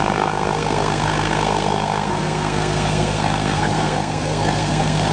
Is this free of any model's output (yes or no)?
no